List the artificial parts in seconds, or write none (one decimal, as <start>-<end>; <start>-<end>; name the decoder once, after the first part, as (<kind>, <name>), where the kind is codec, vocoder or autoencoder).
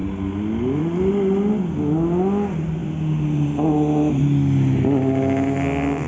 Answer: none